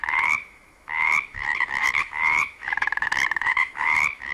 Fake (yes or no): yes